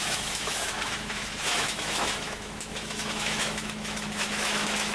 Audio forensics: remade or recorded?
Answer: remade